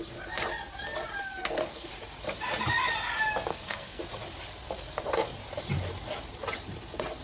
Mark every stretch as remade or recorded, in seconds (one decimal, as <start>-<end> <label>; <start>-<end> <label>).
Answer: 0.0-1.2 recorded; 1.2-1.9 remade; 1.9-3.5 recorded; 3.5-4.0 remade; 4.0-7.2 recorded